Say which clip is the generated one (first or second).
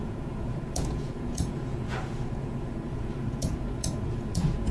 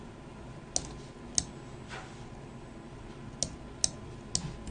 first